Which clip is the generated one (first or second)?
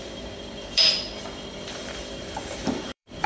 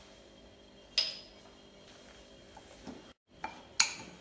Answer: first